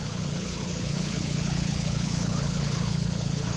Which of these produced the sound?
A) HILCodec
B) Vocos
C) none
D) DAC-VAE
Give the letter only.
A